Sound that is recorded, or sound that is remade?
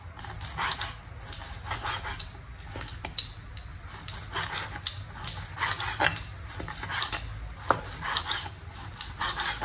recorded